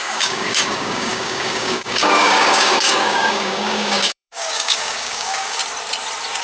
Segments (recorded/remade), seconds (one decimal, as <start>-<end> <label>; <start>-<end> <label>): 0.0-5.6 remade; 5.6-6.4 recorded